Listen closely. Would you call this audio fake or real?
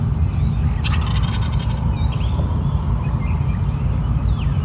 real